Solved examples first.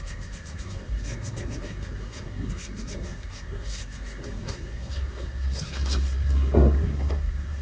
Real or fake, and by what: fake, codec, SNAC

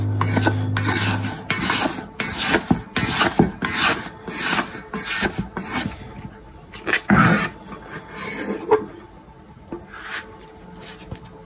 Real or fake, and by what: real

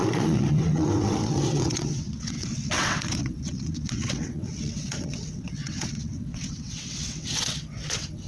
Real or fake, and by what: fake, vocoder, WaveNeXt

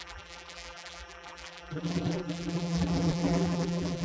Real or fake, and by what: fake, vocoder, BigVGAN v2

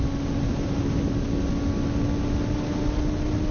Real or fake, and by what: real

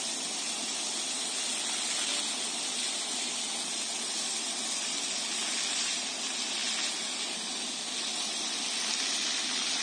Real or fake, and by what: real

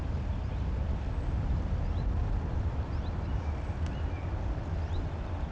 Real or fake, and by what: real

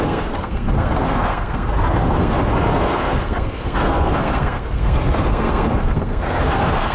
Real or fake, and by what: fake, codec, SNAC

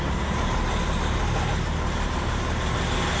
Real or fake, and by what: real